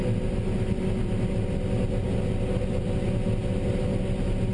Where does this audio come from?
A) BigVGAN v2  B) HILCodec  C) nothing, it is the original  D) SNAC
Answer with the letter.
C